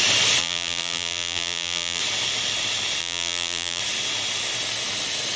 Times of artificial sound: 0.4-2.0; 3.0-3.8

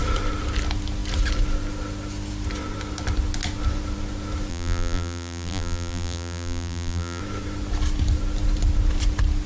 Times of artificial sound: 4.5-7.2